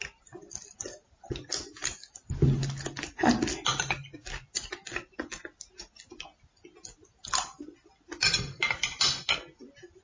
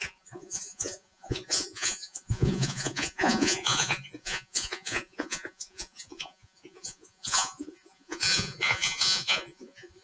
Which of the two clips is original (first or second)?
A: first